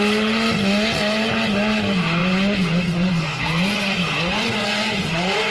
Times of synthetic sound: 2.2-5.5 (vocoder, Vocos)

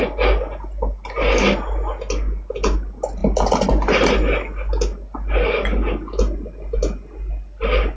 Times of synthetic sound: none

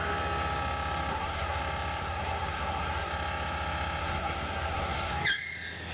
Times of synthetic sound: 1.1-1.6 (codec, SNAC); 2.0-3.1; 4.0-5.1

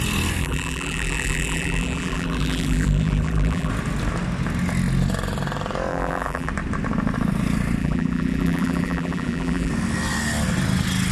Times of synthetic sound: 0.4-3.7 (vocoder, BigVGAN v2); 5.9-6.5; 7.8-9.7